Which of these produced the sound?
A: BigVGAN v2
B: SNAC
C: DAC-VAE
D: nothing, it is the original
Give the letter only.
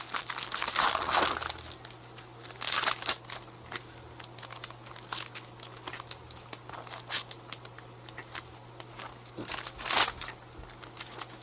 D